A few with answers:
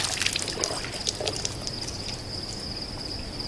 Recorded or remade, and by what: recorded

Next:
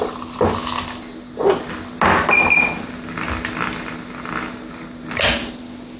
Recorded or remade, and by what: recorded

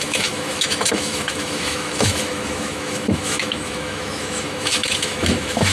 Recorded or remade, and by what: remade, autoencoder, DAC-VAE